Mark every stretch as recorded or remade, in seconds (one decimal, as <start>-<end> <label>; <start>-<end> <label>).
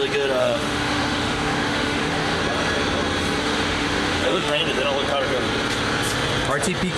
0.0-0.4 recorded; 0.4-2.4 remade; 2.4-3.4 recorded; 3.4-4.6 remade; 4.6-7.0 recorded